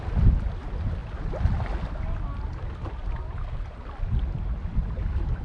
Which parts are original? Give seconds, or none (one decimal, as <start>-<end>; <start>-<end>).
0.0-5.4

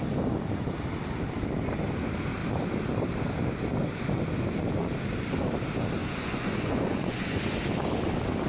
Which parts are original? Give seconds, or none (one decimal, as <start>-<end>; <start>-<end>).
0.0-6.0; 7.4-8.5

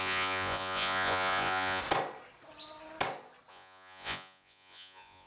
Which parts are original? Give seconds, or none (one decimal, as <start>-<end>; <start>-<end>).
1.8-3.5

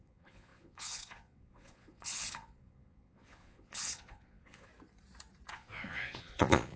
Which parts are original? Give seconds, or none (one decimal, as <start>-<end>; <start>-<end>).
4.7-5.5

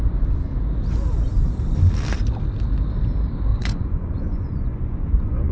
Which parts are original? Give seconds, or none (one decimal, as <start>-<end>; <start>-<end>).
0.0-3.5